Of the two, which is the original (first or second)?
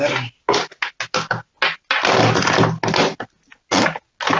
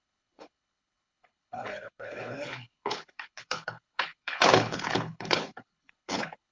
first